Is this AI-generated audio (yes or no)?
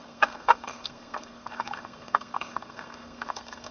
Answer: yes